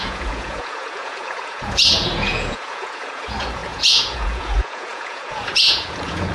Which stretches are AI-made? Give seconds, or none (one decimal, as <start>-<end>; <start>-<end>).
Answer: 0.0-6.3

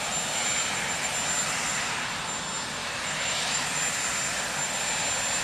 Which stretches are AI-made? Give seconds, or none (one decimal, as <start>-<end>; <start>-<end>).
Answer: 2.8-3.6

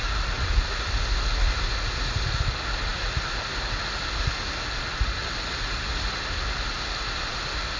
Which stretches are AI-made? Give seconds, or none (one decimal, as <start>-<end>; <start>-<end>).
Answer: none

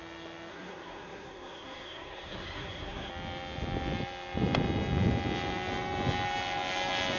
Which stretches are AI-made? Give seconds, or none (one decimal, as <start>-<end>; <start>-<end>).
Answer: 0.5-3.1